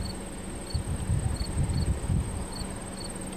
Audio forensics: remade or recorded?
recorded